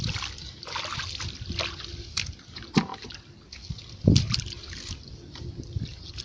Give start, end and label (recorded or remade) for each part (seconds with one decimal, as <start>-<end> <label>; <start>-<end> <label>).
0.0-6.2 recorded

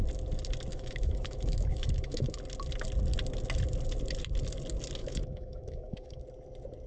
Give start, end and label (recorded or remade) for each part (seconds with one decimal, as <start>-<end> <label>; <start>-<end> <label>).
0.0-0.7 recorded; 0.7-2.4 remade; 2.4-5.0 recorded; 5.0-6.2 remade; 6.2-6.9 recorded

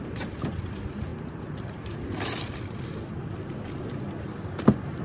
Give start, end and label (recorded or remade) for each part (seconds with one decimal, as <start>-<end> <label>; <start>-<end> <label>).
0.0-5.0 recorded

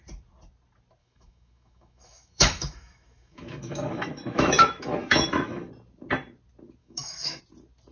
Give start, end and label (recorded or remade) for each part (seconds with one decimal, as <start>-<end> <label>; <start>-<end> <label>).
0.0-1.0 recorded; 1.0-5.7 remade; 5.7-6.8 recorded; 6.8-7.4 remade; 7.4-7.9 recorded

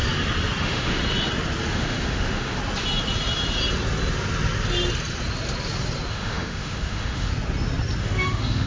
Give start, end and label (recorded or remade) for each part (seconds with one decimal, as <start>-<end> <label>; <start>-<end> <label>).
0.0-0.6 recorded; 0.6-1.0 remade; 1.0-1.7 recorded; 1.7-2.6 remade; 2.6-6.1 recorded; 6.1-7.3 remade; 7.3-8.0 recorded; 8.0-8.7 remade

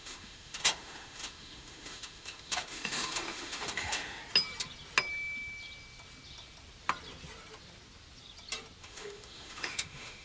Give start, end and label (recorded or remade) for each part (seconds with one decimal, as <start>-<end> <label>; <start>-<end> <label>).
0.0-4.2 remade; 4.2-8.8 recorded; 8.8-10.2 remade

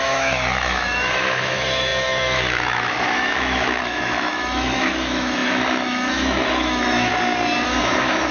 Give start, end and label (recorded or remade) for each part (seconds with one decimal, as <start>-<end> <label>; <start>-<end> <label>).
0.0-7.1 remade; 7.1-7.8 recorded; 7.8-8.3 remade

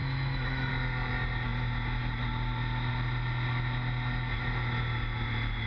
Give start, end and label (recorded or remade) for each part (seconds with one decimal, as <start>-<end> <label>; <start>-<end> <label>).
0.0-0.7 remade; 0.7-5.7 recorded